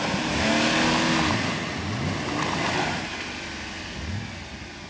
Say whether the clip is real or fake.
real